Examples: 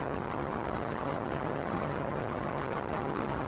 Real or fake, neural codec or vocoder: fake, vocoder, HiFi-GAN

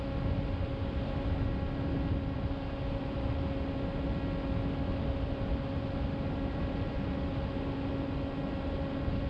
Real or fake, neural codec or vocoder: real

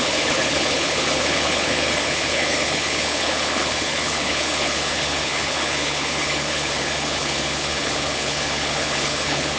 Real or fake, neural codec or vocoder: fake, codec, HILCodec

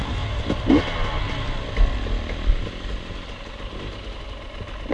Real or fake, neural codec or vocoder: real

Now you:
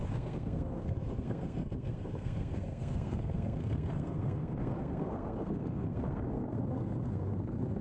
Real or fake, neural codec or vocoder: fake, codec, SNAC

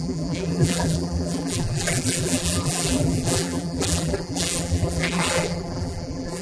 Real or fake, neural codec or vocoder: fake, vocoder, BigVGAN v2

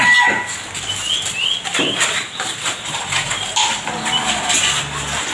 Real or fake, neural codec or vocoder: real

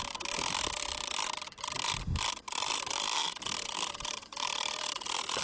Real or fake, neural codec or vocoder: real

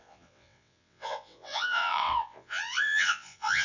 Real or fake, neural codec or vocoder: fake, vocoder, WaveNeXt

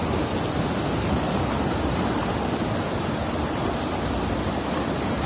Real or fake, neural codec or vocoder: real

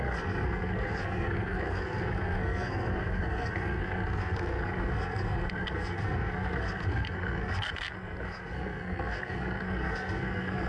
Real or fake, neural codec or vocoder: fake, codec, SNAC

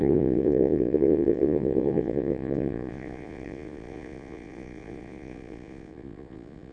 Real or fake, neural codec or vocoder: fake, vocoder, Vocos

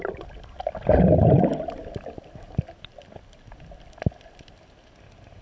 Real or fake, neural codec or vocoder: real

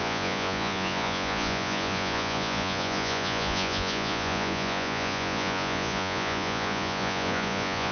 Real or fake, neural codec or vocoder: fake, vocoder, Vocos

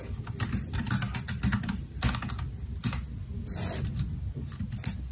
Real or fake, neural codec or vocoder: real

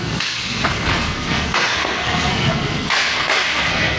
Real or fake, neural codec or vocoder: fake, codec, SNAC